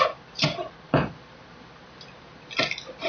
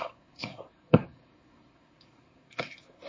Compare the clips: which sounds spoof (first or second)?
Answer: second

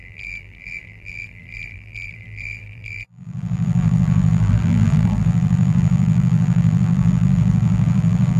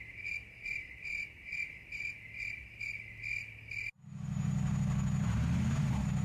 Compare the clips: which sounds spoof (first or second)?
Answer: first